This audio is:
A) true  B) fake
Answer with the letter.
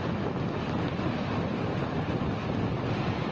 A